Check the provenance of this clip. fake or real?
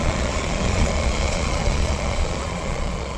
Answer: fake